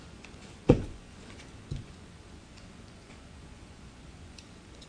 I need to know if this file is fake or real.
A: fake